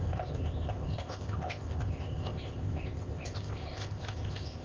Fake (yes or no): yes